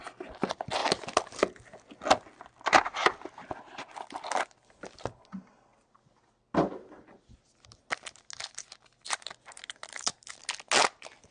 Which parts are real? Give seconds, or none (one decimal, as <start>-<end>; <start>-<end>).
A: 0.0-11.3